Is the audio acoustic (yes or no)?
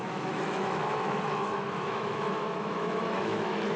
no